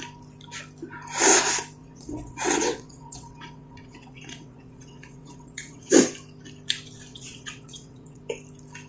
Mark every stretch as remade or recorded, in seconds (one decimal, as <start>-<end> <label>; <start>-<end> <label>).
0.0-1.8 recorded; 1.8-5.9 remade; 5.9-7.1 recorded; 7.1-8.2 remade; 8.2-8.9 recorded

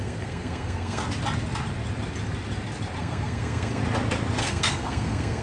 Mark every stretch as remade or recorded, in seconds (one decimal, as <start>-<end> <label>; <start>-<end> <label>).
0.0-1.0 remade; 1.0-3.0 recorded; 3.0-3.8 remade; 3.8-4.4 recorded; 4.4-5.4 remade

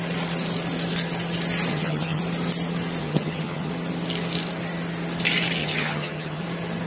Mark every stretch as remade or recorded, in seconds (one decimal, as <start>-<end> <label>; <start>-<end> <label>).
0.0-1.7 recorded; 1.7-2.2 remade; 2.2-3.0 recorded; 3.0-3.7 remade; 3.7-5.6 recorded; 5.6-6.4 remade; 6.4-6.9 recorded

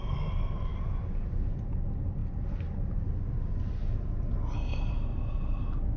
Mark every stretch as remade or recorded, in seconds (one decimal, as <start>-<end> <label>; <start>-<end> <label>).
0.0-6.0 recorded

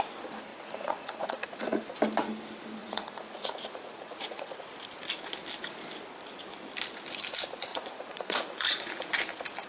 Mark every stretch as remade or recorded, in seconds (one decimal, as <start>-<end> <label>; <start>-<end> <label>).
0.0-0.5 recorded; 0.5-1.8 remade; 1.8-2.8 recorded; 2.8-4.6 remade; 4.6-7.7 recorded; 7.7-8.9 remade; 8.9-9.7 recorded

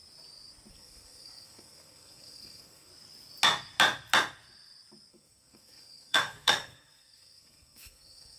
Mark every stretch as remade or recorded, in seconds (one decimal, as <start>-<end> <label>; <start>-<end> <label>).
0.0-0.7 recorded; 0.7-2.9 remade; 2.9-5.1 recorded; 5.1-8.4 remade